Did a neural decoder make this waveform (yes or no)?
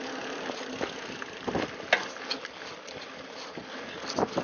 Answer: no